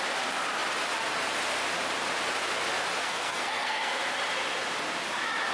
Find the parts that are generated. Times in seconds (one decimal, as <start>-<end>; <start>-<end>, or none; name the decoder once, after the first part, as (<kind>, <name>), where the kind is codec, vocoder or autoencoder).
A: 3.0-4.0 (codec, SNAC)